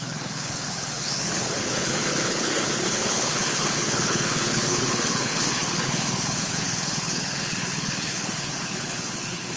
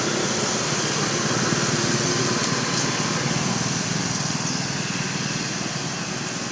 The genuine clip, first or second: second